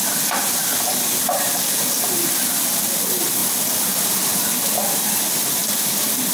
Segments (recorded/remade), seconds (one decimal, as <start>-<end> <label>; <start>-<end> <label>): 0.0-6.3 recorded